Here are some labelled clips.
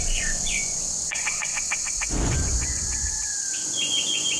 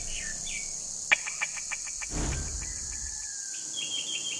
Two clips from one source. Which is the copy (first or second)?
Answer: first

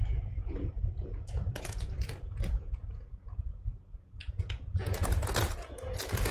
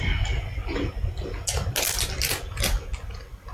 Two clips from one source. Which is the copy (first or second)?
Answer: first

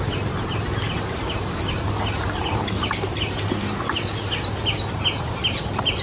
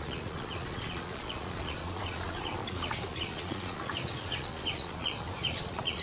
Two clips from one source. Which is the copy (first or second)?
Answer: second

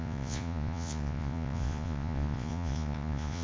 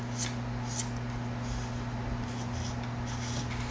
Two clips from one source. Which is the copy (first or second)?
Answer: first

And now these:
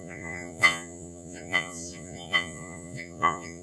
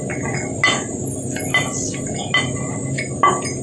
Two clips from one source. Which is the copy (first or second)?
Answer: first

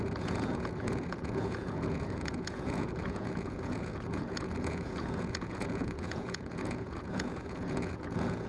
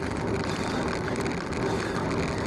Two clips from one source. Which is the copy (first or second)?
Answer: first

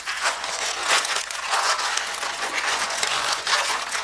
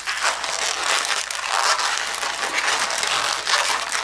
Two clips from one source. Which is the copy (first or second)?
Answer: first